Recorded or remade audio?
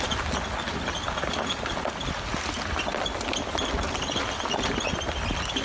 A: recorded